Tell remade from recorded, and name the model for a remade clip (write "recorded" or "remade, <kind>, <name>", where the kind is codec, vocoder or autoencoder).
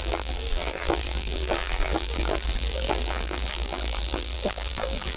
remade, vocoder, BigVGAN v2